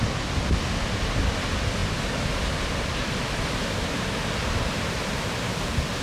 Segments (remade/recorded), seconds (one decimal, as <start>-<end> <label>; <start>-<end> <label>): 0.0-6.0 recorded